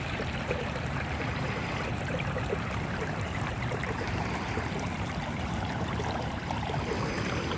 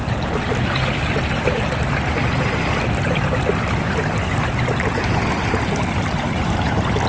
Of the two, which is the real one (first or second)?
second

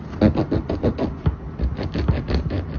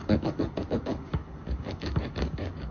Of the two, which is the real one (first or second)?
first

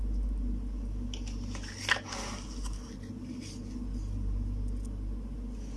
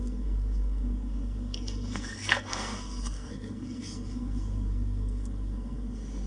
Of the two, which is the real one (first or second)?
first